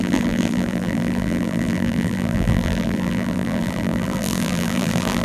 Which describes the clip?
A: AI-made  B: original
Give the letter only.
A